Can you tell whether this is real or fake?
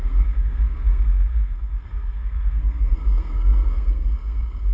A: fake